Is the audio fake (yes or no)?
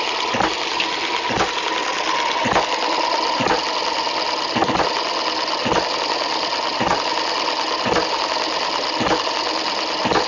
no